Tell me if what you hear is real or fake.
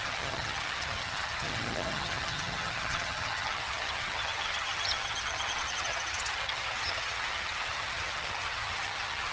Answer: fake